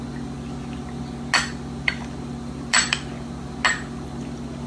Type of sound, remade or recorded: recorded